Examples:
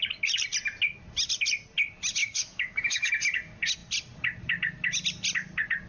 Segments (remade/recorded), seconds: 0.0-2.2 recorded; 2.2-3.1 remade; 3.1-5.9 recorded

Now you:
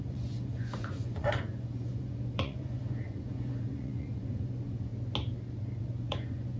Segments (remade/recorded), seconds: 0.0-4.9 remade; 4.9-5.8 recorded; 5.8-6.6 remade

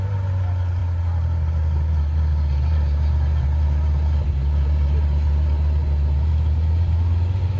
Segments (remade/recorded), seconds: 0.0-7.6 recorded